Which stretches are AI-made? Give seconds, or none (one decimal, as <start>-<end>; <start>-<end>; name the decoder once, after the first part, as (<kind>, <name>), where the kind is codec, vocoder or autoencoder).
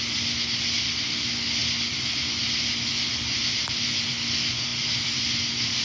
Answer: none